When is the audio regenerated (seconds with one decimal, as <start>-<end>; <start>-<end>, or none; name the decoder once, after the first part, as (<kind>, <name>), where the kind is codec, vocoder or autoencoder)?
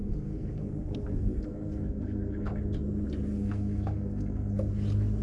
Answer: 0.0-2.6 (codec, SNAC); 3.3-4.7